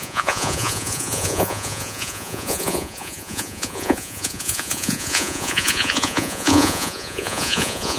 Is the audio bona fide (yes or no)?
no